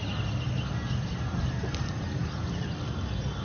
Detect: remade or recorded recorded